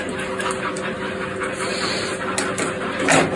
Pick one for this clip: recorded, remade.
recorded